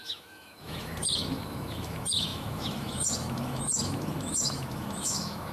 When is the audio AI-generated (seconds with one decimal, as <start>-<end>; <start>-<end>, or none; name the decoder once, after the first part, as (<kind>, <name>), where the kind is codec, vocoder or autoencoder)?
0.0-5.5 (autoencoder, DAC-VAE)